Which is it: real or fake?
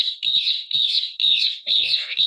fake